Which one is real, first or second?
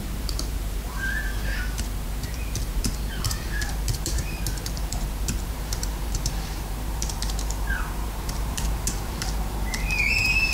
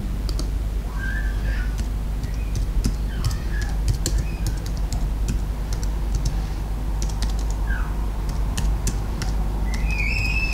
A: second